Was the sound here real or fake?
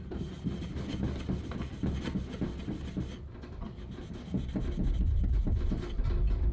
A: real